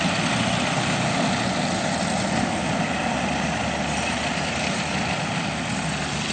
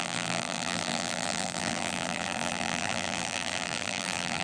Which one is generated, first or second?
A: second